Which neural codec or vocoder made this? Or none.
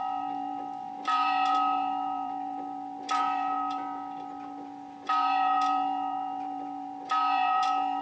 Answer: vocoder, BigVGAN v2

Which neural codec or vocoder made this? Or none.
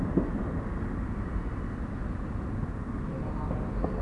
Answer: none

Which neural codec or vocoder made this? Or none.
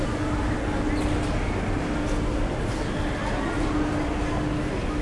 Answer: none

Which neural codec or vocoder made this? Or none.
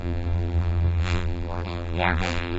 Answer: vocoder, BigVGAN v2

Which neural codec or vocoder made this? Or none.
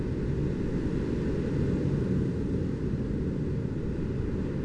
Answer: none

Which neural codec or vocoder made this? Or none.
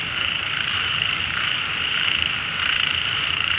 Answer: vocoder, BigVGAN v2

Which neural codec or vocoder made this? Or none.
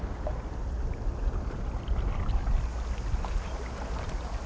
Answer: none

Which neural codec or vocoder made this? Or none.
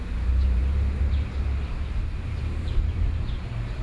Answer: vocoder, BigVGAN v2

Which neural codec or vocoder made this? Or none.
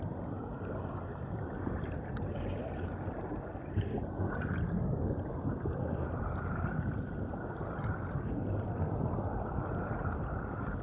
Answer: vocoder, BigVGAN v2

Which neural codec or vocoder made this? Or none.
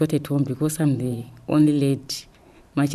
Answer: vocoder, BigVGAN v2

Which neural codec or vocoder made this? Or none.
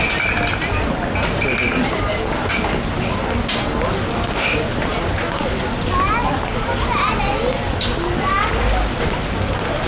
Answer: none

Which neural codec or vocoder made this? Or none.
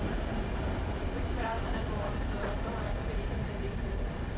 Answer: vocoder, BigVGAN v2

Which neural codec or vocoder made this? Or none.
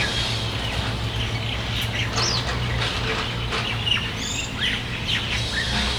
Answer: none